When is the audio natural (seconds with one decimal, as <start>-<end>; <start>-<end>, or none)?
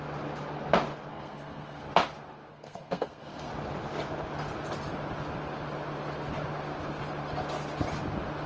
0.0-1.1; 1.8-2.5; 3.5-8.5